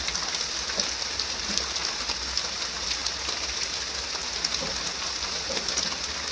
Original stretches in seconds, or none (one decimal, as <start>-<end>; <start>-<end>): 0.0-6.3